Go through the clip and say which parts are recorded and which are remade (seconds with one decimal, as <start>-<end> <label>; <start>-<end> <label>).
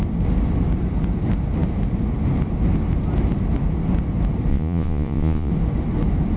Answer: 0.0-4.5 recorded; 4.5-5.5 remade; 5.5-6.4 recorded